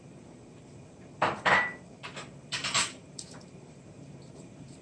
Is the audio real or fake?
fake